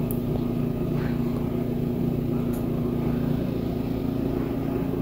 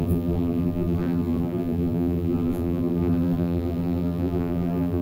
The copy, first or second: second